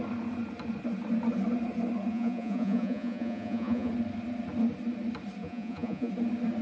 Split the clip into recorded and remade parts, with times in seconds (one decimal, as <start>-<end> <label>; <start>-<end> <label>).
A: 0.0-2.1 recorded; 2.1-3.9 remade; 3.9-5.4 recorded; 5.4-6.1 remade; 6.1-6.6 recorded